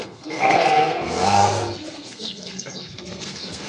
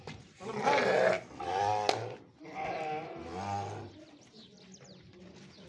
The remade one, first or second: first